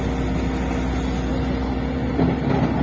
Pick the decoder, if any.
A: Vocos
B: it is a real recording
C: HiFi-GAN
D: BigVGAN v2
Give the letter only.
B